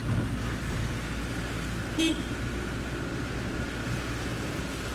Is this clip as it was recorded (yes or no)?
yes